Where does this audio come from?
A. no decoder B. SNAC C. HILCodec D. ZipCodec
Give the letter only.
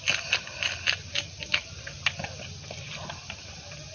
A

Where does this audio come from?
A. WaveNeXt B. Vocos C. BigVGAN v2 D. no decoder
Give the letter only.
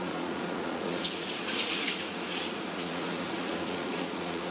B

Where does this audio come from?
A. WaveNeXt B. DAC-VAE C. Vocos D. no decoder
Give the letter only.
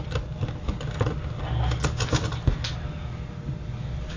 D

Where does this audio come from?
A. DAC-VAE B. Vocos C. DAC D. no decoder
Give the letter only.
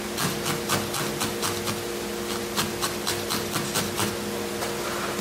D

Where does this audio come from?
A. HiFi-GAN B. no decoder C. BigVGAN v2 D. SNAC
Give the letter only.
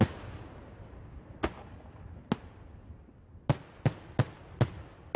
B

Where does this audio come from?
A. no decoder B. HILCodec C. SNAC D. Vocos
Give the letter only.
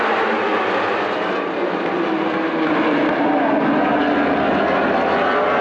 A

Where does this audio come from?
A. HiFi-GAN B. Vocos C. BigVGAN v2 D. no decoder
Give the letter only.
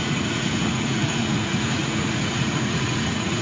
B